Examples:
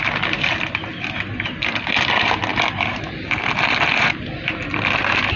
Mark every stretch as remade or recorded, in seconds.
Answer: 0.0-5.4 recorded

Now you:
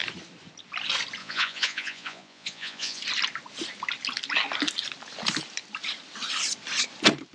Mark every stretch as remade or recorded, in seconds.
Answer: 0.0-1.2 recorded; 1.2-3.0 remade; 3.0-7.3 recorded

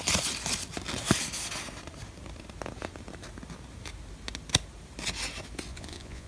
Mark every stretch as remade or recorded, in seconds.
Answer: 0.0-5.7 recorded; 5.7-6.3 remade

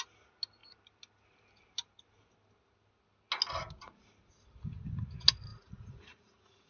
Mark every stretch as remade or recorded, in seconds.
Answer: 0.0-5.5 recorded; 5.5-6.7 remade